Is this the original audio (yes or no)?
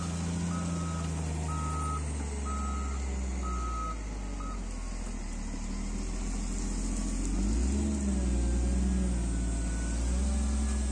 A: yes